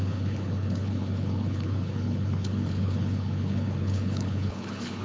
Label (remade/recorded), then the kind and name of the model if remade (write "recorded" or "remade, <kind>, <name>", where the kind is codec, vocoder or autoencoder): remade, codec, HILCodec